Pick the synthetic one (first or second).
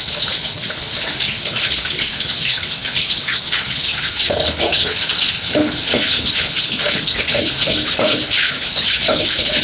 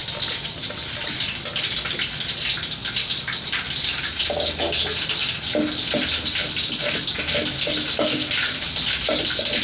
first